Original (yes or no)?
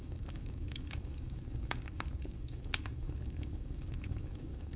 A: no